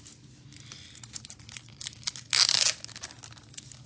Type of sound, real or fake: real